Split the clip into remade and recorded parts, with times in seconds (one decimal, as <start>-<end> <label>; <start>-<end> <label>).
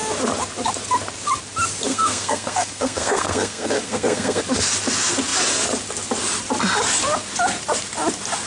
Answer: 0.0-1.9 recorded; 1.9-4.4 remade; 4.4-8.5 recorded